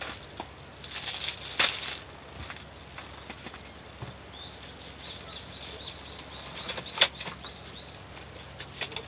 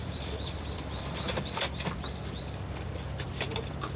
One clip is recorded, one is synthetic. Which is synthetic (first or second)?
second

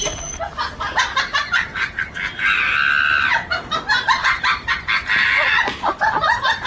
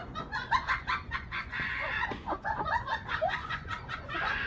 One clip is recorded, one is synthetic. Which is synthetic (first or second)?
second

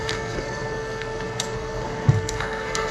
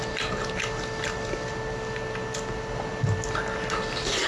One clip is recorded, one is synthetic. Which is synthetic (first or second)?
first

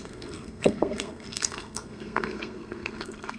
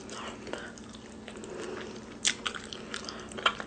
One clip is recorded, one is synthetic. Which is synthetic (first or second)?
first